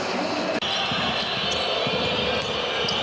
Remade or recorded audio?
recorded